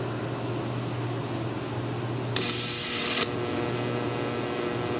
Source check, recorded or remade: recorded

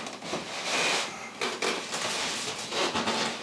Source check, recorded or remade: recorded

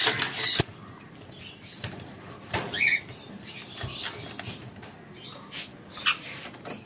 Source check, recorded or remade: recorded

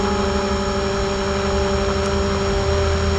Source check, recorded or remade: recorded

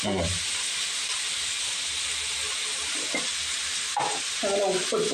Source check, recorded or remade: recorded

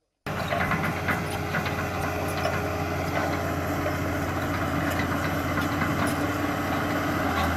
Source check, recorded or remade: recorded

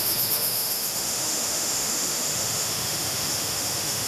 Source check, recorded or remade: remade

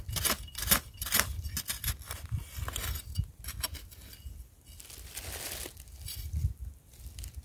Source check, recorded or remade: recorded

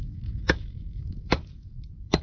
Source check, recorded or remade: remade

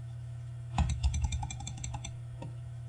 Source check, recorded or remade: remade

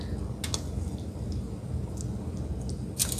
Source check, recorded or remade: recorded